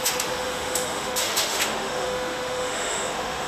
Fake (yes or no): yes